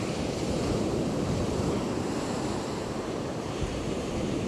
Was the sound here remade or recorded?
remade